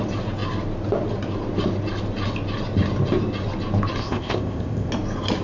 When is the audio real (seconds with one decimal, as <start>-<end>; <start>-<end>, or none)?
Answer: 0.0-4.0; 4.9-5.4